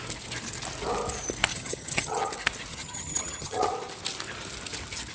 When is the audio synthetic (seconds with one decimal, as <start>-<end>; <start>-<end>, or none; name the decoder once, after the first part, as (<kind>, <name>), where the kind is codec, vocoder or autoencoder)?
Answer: 1.5-2.3 (vocoder, HiFi-GAN); 2.7-3.7